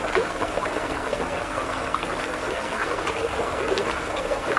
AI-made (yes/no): yes